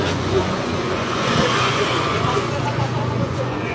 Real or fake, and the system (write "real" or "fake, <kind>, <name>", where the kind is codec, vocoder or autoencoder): fake, vocoder, Vocos